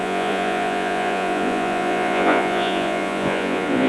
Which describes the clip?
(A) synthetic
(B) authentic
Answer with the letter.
A